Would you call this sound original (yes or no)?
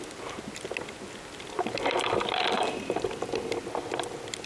yes